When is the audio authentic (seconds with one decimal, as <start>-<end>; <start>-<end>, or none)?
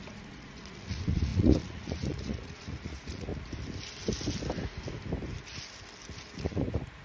3.3-6.2